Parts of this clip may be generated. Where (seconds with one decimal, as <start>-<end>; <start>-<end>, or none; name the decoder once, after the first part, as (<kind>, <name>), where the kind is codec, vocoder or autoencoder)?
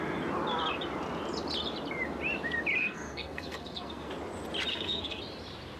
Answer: 2.8-4.1 (codec, SNAC); 4.7-5.2